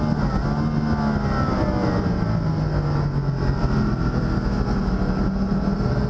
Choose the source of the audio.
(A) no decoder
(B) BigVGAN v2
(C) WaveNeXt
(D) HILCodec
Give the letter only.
A